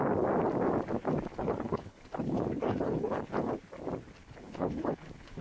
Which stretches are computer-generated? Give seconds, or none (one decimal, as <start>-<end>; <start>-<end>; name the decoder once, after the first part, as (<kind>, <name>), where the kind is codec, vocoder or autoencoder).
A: 1.3-3.5 (codec, HILCodec); 4.2-5.4